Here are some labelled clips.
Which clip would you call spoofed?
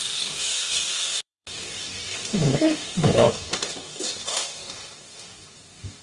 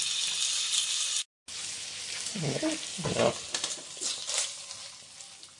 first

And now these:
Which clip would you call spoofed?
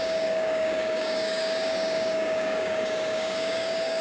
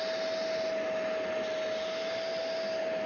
first